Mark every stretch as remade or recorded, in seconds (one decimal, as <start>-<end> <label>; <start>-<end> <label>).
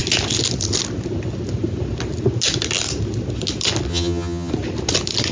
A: 0.0-3.9 recorded; 3.9-4.5 remade; 4.5-5.3 recorded